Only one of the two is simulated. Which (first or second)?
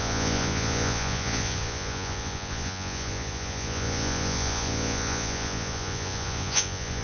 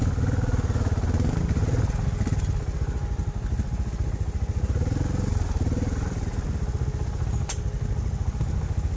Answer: first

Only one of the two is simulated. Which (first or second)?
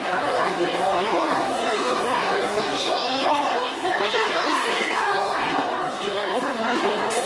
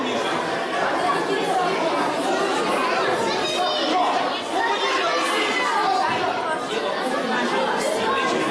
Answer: first